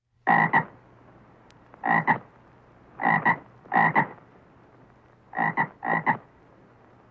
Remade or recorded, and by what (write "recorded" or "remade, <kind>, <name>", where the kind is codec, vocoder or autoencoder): recorded